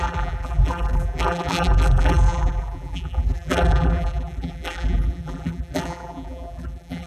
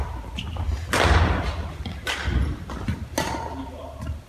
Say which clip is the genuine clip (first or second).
second